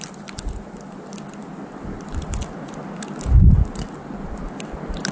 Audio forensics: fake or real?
real